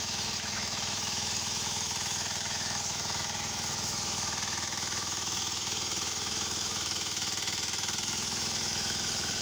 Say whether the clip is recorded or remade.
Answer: remade